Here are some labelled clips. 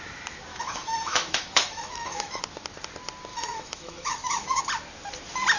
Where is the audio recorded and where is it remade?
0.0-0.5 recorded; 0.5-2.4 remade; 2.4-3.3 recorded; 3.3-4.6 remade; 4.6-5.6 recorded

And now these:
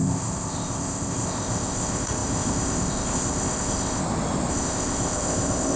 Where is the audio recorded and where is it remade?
0.0-4.0 remade; 4.0-4.5 recorded; 4.5-5.8 remade

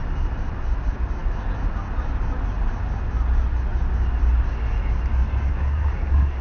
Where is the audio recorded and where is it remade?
0.0-5.5 recorded; 5.5-6.4 remade